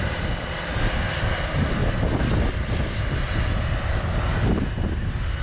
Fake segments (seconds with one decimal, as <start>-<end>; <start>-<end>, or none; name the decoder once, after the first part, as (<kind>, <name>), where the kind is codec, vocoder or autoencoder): none